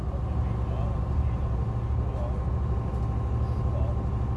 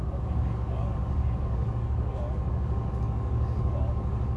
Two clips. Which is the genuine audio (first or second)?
first